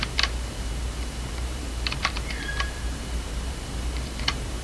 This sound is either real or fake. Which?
fake